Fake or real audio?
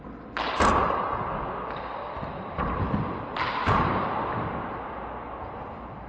real